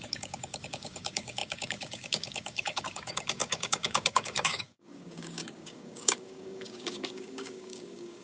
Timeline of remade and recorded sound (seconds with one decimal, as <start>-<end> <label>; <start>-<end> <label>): 0.0-8.2 remade